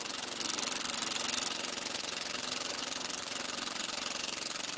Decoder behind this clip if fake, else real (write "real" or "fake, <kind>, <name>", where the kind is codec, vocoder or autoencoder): real